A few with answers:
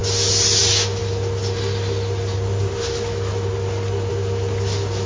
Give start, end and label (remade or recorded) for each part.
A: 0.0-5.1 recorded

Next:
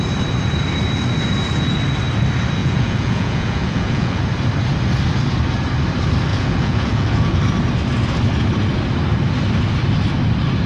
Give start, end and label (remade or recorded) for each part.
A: 0.0-2.6 recorded; 2.6-4.2 remade; 4.2-6.3 recorded; 6.3-7.4 remade; 7.4-10.7 recorded